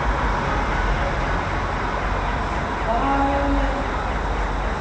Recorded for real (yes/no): yes